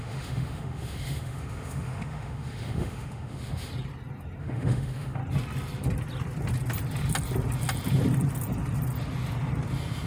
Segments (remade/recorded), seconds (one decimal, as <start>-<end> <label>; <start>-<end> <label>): 0.0-3.7 remade; 3.7-4.4 recorded; 4.4-5.2 remade; 5.2-10.1 recorded